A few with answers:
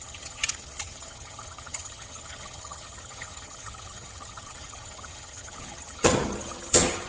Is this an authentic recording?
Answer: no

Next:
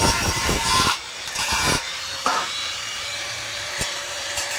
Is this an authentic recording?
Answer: no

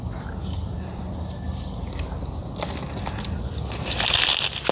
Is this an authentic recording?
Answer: no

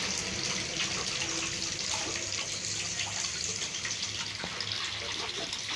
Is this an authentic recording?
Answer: yes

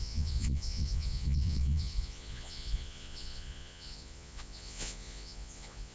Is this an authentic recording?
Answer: no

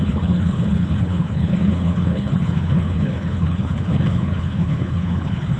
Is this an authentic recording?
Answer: no